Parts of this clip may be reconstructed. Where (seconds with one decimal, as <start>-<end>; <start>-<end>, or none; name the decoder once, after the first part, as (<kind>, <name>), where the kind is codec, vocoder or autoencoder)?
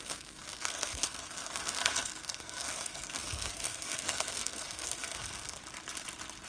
0.0-5.6 (codec, SNAC)